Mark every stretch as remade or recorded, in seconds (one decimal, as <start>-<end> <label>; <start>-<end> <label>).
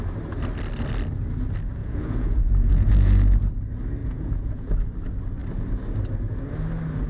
0.0-1.8 recorded; 1.8-2.9 remade; 2.9-4.0 recorded; 4.0-4.7 remade; 4.7-7.1 recorded